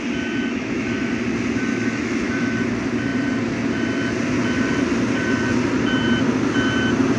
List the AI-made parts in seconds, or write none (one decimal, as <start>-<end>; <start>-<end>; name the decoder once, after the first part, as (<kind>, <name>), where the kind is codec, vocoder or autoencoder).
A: 0.5-1.1 (autoencoder, DAC-VAE); 1.7-2.6